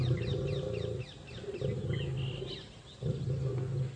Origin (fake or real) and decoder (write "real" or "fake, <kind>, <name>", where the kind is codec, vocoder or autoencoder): real